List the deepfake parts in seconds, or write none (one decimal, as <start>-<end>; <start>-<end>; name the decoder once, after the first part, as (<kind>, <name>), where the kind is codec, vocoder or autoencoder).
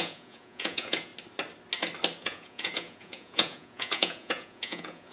0.0-1.1 (vocoder, Vocos); 2.2-5.1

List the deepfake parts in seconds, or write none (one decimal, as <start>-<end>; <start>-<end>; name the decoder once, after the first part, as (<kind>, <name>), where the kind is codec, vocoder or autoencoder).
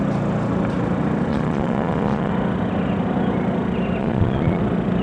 1.3-2.3 (vocoder, Vocos); 4.0-4.6